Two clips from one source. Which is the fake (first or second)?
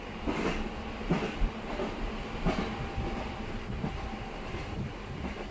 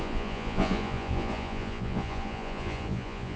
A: second